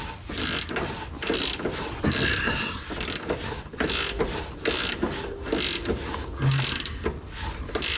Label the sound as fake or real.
real